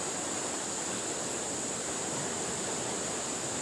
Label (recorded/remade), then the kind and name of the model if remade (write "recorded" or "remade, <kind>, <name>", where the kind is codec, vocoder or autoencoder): recorded